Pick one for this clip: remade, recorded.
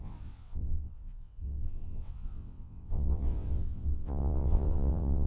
remade